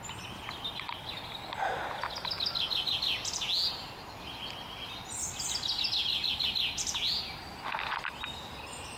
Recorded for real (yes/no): yes